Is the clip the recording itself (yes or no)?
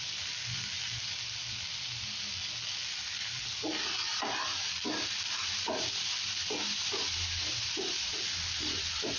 yes